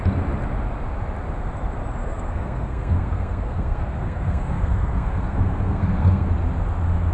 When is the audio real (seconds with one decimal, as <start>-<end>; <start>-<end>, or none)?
0.0-2.0; 6.3-7.1

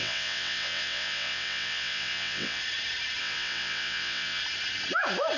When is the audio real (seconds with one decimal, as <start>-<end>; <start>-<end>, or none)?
2.6-3.2; 4.4-5.4

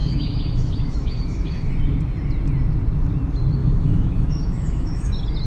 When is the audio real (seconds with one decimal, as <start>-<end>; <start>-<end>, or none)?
1.7-3.6; 5.1-5.5

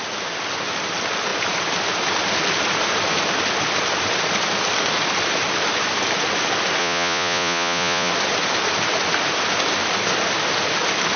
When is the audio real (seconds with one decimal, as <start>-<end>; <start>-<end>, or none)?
0.0-6.8; 8.1-11.2

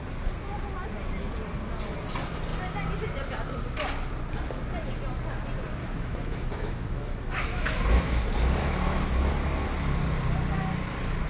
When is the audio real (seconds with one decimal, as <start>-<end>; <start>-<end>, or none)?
0.0-5.8; 8.2-8.6; 9.3-11.3